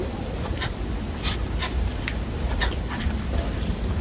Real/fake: real